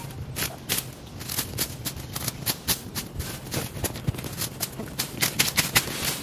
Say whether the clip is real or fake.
real